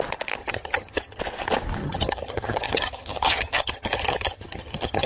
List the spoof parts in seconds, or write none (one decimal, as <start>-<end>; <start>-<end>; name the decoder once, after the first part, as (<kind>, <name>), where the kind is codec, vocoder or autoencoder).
0.4-1.2 (vocoder, HiFi-GAN); 1.8-5.1